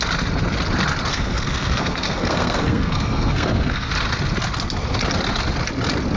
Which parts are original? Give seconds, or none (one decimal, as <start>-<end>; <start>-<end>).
0.0-1.1; 3.9-6.2